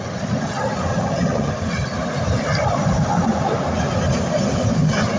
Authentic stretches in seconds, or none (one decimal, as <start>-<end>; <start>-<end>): 0.0-0.9; 1.5-5.2